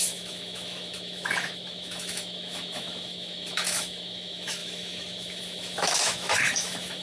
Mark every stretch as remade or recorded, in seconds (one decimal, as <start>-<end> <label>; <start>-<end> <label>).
0.0-7.0 remade